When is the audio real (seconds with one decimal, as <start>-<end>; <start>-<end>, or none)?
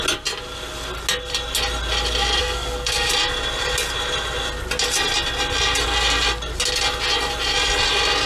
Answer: 0.0-2.4; 3.1-8.3